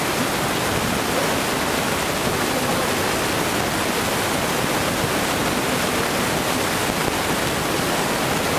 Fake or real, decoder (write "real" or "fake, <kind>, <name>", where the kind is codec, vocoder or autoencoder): real